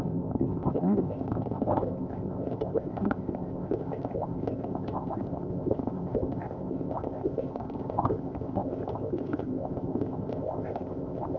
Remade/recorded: remade